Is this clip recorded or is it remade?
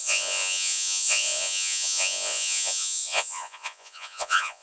remade